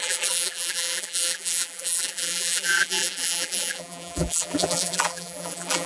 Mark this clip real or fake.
fake